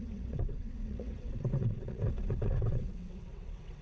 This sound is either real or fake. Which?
fake